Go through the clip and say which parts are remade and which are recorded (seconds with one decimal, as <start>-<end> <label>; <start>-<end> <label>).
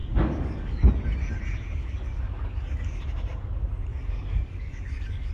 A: 0.0-0.9 remade; 0.9-1.8 recorded; 1.8-3.0 remade; 3.0-3.9 recorded; 3.9-5.3 remade